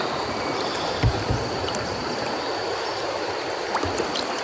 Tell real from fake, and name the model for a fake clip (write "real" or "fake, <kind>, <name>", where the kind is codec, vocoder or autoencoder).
real